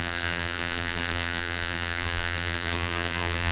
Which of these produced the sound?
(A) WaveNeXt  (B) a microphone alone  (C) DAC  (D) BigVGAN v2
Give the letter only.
D